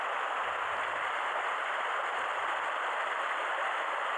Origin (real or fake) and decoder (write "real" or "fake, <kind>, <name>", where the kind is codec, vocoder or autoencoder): real